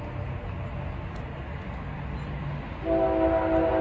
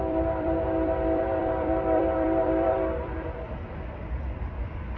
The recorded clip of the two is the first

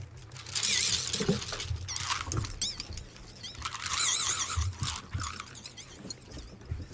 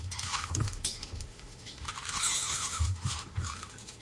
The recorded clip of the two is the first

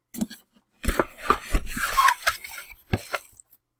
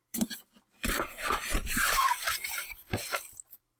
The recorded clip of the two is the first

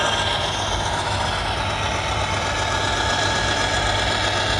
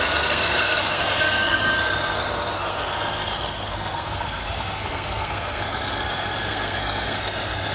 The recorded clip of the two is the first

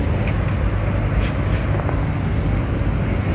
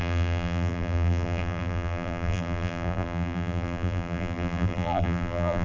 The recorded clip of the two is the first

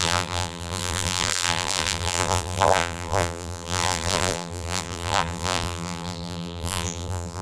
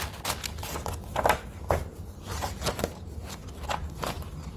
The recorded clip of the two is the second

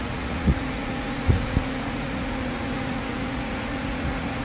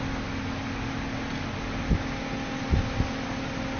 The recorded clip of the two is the second